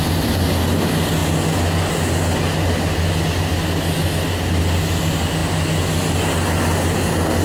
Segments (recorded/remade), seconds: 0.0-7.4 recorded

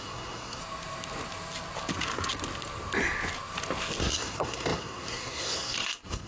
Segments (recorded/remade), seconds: 0.0-0.6 remade; 0.6-4.0 recorded; 4.0-6.3 remade

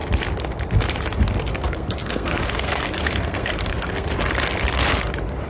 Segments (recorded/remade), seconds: 0.0-1.5 recorded; 1.5-4.1 remade; 4.1-5.5 recorded

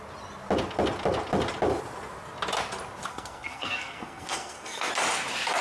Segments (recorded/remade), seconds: 0.0-3.1 recorded; 3.1-4.9 remade; 4.9-5.6 recorded